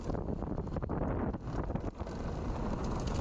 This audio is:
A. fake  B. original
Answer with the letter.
B